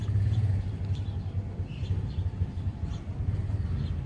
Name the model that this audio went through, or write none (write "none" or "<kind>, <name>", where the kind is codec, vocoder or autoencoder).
none